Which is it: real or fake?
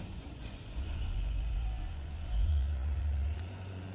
fake